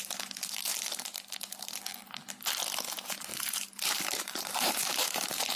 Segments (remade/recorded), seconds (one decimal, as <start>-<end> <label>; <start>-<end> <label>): 0.0-3.3 recorded; 3.3-5.6 remade